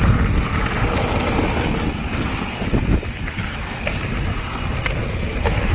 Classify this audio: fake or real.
real